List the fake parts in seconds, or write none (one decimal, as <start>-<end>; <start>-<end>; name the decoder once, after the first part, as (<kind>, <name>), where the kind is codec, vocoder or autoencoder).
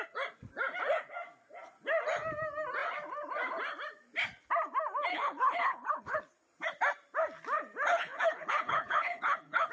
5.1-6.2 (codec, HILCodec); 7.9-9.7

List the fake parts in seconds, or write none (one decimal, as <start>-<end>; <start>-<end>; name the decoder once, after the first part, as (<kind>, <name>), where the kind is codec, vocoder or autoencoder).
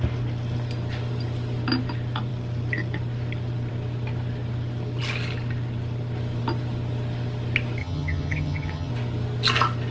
7.8-8.9 (vocoder, HiFi-GAN)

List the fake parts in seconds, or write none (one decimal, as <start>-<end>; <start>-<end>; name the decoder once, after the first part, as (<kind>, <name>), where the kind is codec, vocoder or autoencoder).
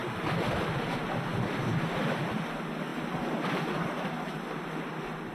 none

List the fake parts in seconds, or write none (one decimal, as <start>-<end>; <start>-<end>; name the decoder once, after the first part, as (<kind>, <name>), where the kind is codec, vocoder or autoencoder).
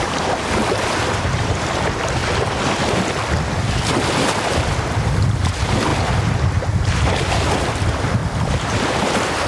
0.0-2.2 (vocoder, BigVGAN v2); 5.0-5.9; 7.7-9.5